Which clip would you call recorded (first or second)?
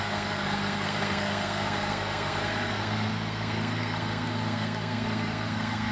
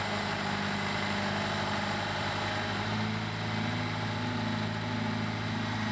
second